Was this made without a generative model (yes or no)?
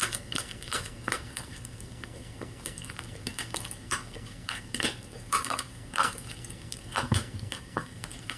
no